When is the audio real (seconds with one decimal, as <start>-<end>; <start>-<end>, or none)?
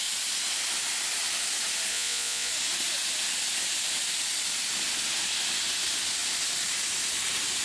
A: 0.0-1.9; 2.5-7.6